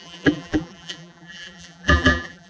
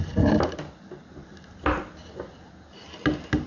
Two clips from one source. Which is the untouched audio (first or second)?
second